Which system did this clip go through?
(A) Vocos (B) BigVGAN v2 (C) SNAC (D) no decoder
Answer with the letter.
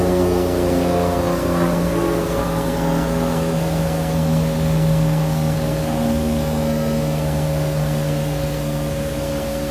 C